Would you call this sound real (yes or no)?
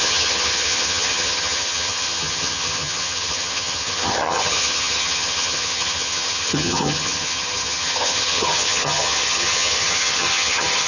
no